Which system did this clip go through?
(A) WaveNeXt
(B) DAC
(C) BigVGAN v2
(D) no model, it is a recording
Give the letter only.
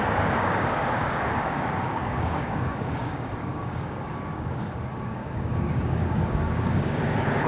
B